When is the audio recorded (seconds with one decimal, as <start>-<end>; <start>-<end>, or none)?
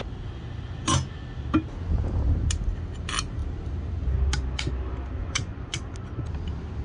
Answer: 0.0-5.2; 5.8-6.8